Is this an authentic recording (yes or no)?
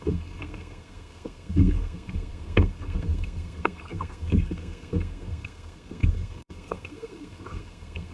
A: no